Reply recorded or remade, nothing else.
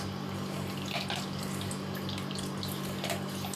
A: recorded